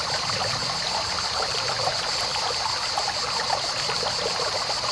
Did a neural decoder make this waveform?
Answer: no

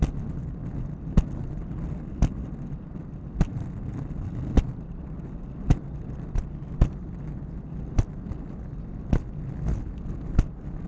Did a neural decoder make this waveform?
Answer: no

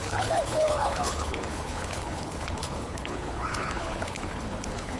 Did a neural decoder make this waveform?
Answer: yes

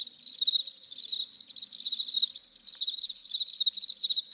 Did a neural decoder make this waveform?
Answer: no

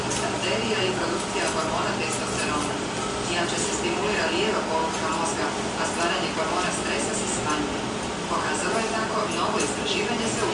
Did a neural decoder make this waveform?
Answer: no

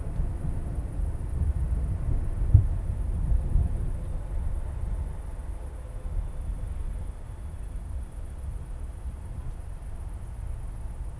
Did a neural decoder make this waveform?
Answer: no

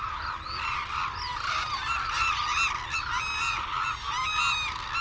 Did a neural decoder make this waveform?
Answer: no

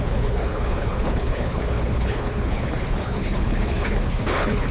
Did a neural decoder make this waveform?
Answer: yes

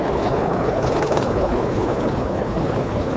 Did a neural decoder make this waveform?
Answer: yes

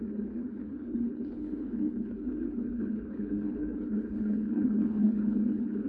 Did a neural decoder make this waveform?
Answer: yes